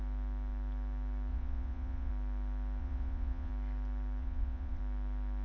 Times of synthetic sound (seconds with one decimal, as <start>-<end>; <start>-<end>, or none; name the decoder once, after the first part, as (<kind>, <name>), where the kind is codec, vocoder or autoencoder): 1.3-2.1 (vocoder, Vocos); 2.8-3.5; 4.2-4.8